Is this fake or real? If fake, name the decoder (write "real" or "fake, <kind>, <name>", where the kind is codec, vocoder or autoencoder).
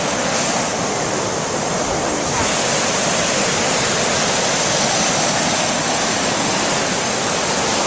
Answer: real